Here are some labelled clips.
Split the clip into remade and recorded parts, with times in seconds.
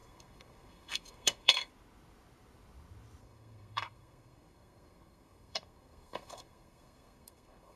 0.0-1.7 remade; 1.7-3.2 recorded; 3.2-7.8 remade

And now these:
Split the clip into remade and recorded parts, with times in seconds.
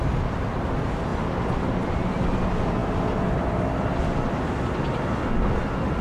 0.0-6.0 recorded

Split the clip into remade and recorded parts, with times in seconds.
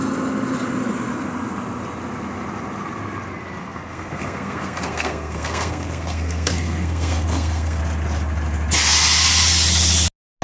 0.0-3.6 recorded; 3.6-7.8 remade; 7.8-10.4 recorded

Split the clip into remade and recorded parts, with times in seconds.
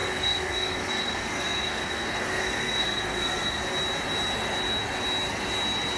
0.0-3.6 remade; 3.6-6.0 recorded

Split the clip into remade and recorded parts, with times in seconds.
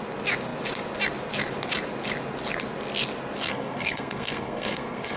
0.0-3.5 recorded; 3.5-5.2 remade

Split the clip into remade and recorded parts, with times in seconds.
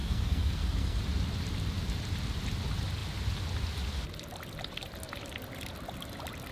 0.0-1.0 remade; 1.0-6.5 recorded